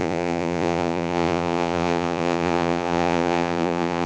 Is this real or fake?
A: fake